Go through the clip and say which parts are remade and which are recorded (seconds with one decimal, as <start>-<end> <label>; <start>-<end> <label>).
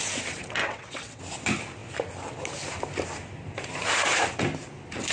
0.0-0.6 recorded; 0.6-1.2 remade; 1.2-5.1 recorded